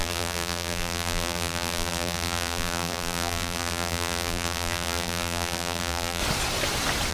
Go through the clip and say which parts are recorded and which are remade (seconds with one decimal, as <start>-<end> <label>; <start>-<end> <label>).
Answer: 0.0-6.2 remade; 6.2-7.1 recorded